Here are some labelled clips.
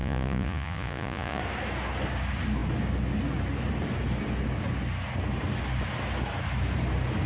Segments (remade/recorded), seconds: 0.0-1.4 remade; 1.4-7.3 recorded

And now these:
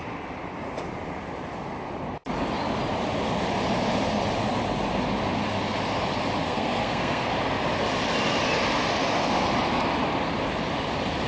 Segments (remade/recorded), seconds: 0.0-6.4 recorded; 6.4-7.3 remade; 7.3-11.3 recorded

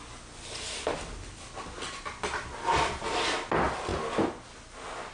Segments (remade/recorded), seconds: 0.0-5.1 recorded

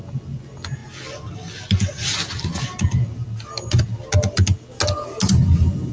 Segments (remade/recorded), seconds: 0.0-5.9 recorded

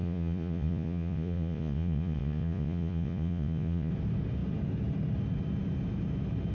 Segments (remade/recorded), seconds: 0.0-3.9 remade; 3.9-6.5 recorded

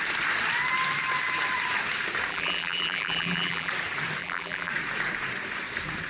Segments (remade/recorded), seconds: 0.0-2.3 recorded; 2.3-3.7 remade; 3.7-4.2 recorded; 4.2-4.7 remade; 4.7-6.1 recorded

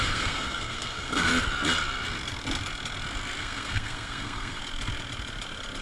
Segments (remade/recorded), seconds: 0.0-1.3 remade; 1.3-3.4 recorded; 3.4-4.6 remade; 4.6-5.8 recorded